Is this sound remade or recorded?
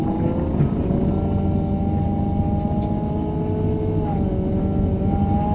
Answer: recorded